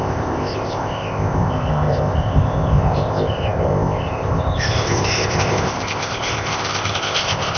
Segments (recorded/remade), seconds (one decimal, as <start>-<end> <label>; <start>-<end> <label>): 0.0-7.6 remade